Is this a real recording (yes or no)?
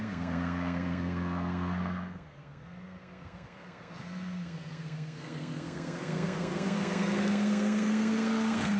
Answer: no